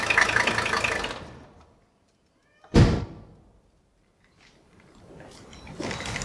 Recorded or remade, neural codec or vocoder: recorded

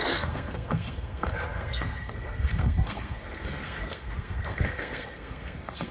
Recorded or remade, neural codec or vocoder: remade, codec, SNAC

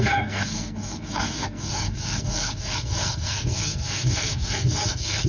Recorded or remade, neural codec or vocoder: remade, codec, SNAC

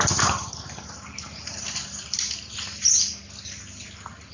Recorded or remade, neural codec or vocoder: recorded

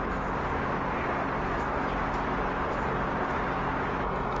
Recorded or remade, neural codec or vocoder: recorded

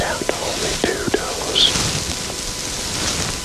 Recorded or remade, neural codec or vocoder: recorded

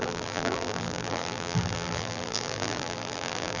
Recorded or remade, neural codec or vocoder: remade, vocoder, BigVGAN v2